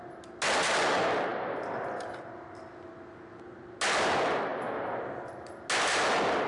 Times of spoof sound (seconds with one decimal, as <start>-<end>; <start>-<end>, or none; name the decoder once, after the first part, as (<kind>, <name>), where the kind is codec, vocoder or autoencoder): none